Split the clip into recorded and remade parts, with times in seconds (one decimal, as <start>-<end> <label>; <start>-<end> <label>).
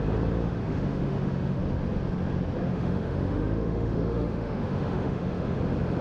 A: 0.0-0.6 recorded; 0.6-1.6 remade; 1.6-2.6 recorded; 2.6-5.6 remade; 5.6-6.0 recorded